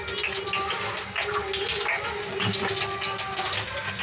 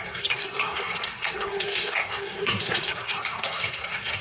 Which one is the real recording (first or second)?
first